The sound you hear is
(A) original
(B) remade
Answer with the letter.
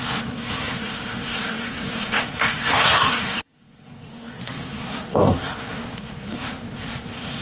B